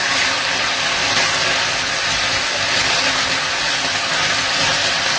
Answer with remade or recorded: recorded